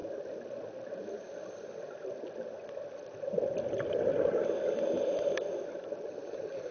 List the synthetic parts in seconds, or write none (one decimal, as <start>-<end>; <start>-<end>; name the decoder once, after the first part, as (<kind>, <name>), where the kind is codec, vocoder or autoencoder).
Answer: none